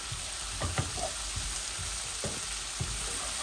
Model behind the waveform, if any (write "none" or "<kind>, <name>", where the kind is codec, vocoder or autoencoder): none